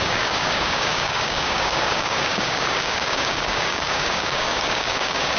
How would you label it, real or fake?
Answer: fake